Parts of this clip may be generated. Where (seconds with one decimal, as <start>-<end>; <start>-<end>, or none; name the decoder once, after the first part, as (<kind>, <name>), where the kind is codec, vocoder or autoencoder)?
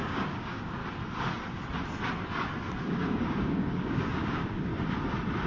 0.0-0.8 (codec, DAC); 2.8-4.7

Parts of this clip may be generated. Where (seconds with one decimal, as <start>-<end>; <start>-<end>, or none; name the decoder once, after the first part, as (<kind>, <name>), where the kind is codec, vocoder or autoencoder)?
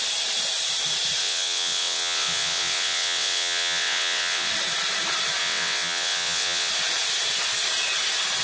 1.2-4.5 (vocoder, WaveNeXt); 5.4-6.7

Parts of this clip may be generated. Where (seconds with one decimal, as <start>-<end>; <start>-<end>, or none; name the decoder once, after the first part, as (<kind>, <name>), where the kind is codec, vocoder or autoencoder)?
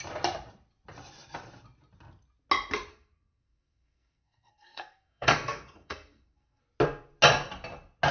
2.9-6.6 (codec, SNAC)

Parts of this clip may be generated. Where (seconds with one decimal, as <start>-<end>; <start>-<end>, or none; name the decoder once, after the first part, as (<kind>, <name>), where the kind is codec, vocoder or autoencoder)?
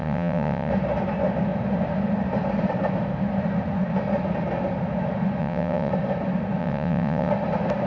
0.0-0.7 (vocoder, WaveNeXt); 5.4-5.9; 6.6-7.3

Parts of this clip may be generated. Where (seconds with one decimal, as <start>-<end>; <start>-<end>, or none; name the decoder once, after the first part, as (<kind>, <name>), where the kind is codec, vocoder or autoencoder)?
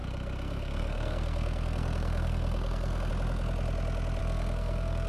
0.0-3.1 (codec, SNAC); 4.2-5.1